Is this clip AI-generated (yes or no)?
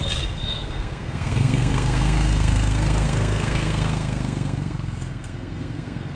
yes